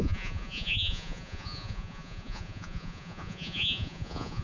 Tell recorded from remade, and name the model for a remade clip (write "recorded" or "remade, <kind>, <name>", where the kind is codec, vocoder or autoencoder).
remade, vocoder, Vocos